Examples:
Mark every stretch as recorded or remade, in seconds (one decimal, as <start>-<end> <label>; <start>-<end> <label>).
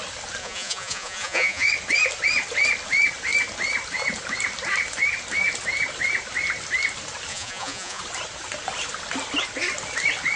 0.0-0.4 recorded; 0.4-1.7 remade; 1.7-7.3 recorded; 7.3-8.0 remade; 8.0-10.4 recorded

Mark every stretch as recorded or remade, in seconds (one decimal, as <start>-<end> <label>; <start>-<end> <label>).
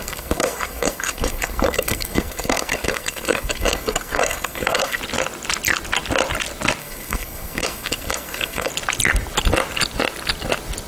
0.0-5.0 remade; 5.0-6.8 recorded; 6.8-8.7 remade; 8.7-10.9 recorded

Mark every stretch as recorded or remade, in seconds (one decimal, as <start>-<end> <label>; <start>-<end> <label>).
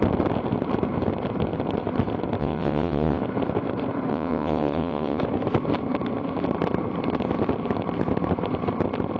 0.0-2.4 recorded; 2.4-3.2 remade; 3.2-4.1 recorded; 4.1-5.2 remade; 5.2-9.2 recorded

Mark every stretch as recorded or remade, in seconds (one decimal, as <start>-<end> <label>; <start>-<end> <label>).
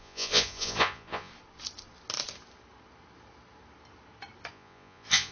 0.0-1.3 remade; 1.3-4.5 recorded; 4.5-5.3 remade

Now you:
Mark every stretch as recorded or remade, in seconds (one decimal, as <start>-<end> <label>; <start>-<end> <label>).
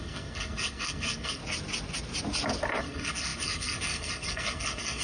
0.0-1.4 remade; 1.4-2.8 recorded; 2.8-5.0 remade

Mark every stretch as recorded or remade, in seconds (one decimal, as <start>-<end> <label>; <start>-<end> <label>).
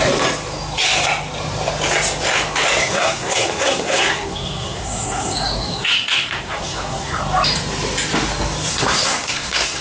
0.0-2.8 recorded; 2.8-7.2 remade; 7.2-8.7 recorded; 8.7-9.8 remade